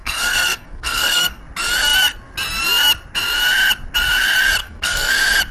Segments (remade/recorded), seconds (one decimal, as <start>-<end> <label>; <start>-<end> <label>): 0.0-1.4 remade; 1.4-4.6 recorded; 4.6-5.1 remade; 5.1-5.5 recorded